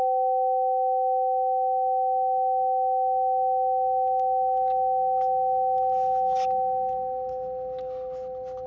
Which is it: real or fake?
real